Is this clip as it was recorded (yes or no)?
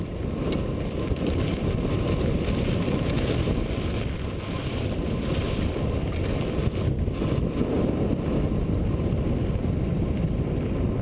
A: yes